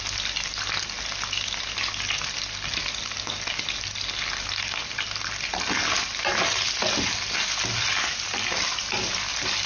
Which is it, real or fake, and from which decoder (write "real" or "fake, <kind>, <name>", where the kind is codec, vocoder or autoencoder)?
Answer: real